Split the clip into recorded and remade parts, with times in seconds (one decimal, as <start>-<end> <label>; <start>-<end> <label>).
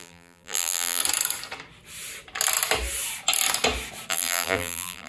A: 0.0-1.0 remade; 1.0-4.1 recorded; 4.1-5.1 remade